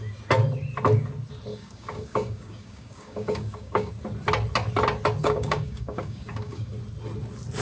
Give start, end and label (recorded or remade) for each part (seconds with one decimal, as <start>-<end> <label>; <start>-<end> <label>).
0.0-1.5 recorded; 1.5-3.9 remade; 3.9-5.2 recorded; 5.2-6.7 remade; 6.7-7.6 recorded